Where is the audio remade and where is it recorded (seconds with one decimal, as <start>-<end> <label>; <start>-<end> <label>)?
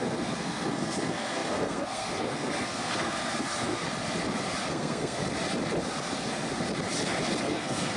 0.0-3.8 remade; 3.8-4.7 recorded; 4.7-5.2 remade; 5.2-7.4 recorded; 7.4-8.0 remade